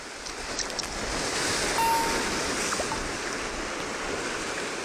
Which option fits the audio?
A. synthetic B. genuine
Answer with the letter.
B